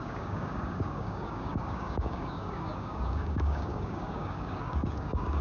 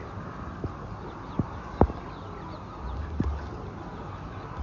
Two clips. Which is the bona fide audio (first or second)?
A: second